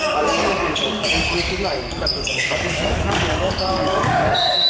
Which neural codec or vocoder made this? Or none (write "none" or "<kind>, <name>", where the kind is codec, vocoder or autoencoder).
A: codec, DAC